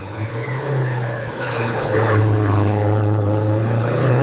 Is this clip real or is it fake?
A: fake